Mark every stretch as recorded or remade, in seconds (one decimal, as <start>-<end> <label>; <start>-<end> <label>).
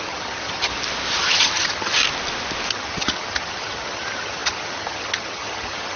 0.0-0.7 remade; 0.7-1.2 recorded; 1.2-2.0 remade; 2.0-2.7 recorded; 2.7-6.0 remade